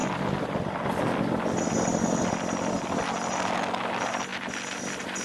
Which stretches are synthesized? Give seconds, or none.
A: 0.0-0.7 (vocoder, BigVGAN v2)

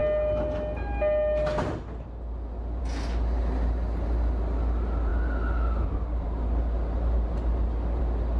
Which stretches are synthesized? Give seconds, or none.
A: none

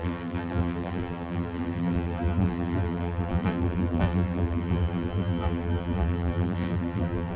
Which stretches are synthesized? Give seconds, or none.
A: 0.0-7.4 (vocoder, BigVGAN v2)

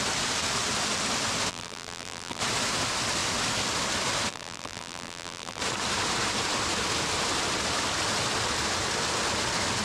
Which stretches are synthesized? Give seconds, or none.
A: 1.5-2.4 (vocoder, BigVGAN v2); 4.3-5.6

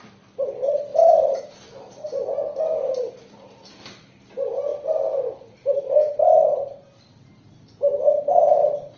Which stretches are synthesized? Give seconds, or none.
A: 0.9-1.4 (vocoder, BigVGAN v2); 4.7-7.3

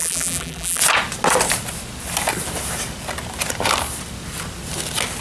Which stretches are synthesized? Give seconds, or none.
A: 0.0-0.8 (vocoder, BigVGAN v2)

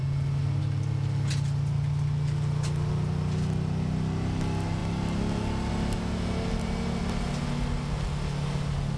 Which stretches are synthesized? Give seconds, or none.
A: none

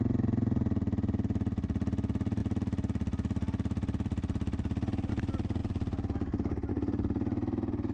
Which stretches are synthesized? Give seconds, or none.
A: none